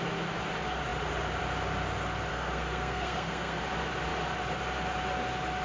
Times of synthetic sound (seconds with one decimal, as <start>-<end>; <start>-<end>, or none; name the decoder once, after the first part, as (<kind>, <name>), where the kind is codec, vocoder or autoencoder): 2.3-3.6 (codec, SNAC)